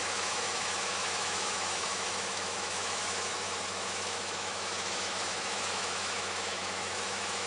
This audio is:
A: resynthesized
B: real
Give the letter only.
A